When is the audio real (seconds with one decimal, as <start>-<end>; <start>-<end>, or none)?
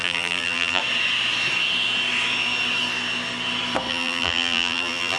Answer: 0.8-3.9